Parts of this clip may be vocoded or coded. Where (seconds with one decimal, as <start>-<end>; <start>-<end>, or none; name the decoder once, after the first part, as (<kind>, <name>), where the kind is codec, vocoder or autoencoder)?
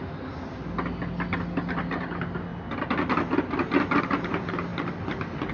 none